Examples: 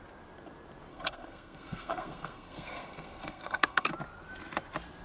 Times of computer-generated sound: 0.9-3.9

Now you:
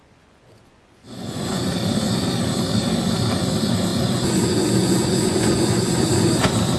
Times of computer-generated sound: 0.0-1.7; 3.9-6.0

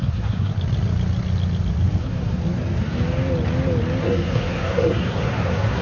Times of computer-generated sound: 0.0-0.5; 2.0-2.4; 4.0-5.8

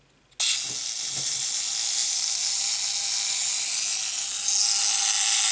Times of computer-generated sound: 2.0-2.6

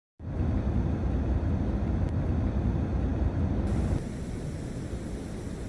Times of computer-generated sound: 3.1-3.7

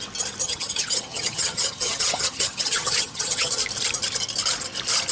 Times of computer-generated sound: 0.4-3.5